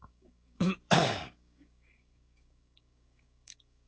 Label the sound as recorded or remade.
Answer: remade